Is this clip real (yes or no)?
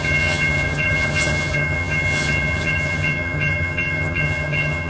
no